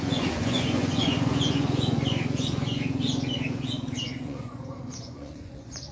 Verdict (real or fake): fake